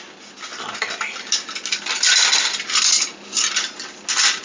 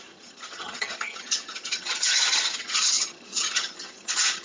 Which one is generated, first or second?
second